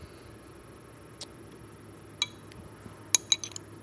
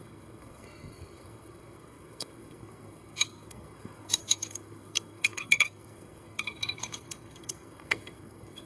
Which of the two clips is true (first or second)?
first